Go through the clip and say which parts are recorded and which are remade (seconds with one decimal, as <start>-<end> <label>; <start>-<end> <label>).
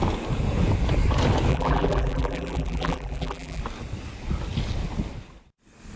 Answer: 0.0-1.5 recorded; 1.5-3.6 remade; 3.6-6.0 recorded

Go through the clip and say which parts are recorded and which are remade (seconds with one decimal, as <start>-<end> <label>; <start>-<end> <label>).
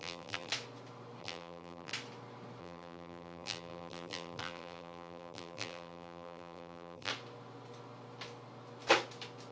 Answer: 0.0-0.5 remade; 0.5-1.2 recorded; 1.2-1.9 remade; 1.9-2.6 recorded; 2.6-7.1 remade; 7.1-9.5 recorded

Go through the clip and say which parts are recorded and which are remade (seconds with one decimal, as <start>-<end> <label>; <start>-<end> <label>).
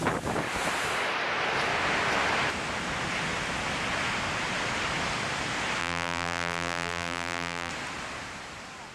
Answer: 0.0-5.8 recorded; 5.8-7.7 remade; 7.7-8.9 recorded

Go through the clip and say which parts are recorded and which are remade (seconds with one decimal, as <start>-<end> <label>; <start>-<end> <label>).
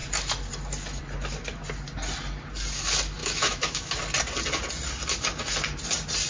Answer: 0.0-3.2 recorded; 3.2-4.0 remade; 4.0-6.3 recorded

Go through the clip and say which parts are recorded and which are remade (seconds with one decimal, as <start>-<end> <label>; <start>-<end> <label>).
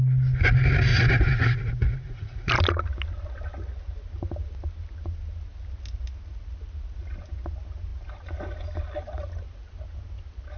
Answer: 0.0-0.9 recorded; 0.9-2.5 remade; 2.5-10.6 recorded